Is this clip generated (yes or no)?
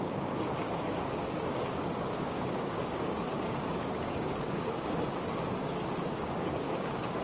yes